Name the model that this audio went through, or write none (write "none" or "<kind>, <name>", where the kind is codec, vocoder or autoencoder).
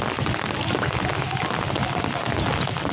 none